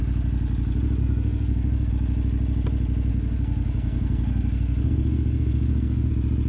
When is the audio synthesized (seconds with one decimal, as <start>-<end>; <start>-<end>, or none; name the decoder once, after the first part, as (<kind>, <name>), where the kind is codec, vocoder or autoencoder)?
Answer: 1.0-1.9 (codec, SNAC); 3.1-6.1